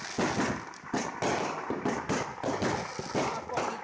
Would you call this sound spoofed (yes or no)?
no